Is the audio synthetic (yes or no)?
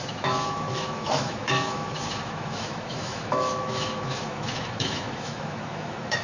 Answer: yes